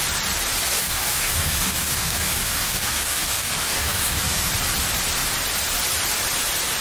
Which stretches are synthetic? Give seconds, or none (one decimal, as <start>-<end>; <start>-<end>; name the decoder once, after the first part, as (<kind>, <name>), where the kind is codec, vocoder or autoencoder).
0.7-4.5 (codec, DAC)